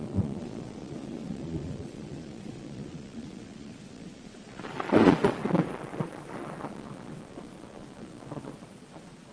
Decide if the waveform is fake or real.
fake